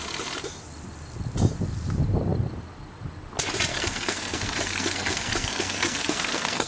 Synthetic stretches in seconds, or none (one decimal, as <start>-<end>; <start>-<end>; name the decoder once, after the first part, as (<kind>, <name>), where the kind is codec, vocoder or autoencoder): 3.7-6.7 (codec, SNAC)